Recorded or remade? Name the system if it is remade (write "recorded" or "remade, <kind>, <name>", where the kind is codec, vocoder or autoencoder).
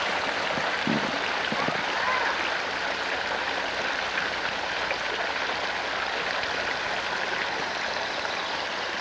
recorded